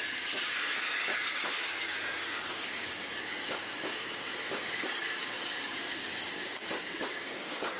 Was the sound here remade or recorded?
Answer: remade